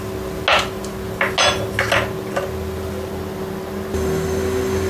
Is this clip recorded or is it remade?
recorded